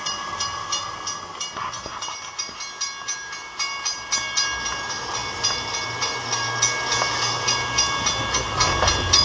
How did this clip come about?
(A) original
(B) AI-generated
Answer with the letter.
A